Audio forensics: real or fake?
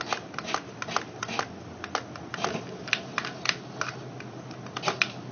real